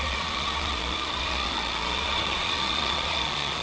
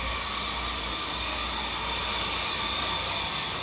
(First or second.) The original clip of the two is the second